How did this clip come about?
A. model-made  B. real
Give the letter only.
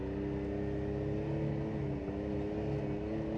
B